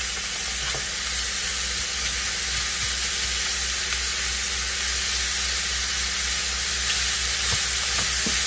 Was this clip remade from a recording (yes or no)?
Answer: no